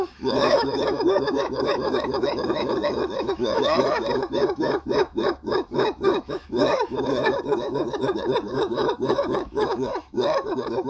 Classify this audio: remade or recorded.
remade